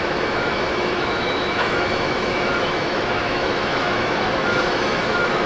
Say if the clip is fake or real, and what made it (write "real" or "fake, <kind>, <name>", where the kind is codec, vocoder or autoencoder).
fake, autoencoder, DAC-VAE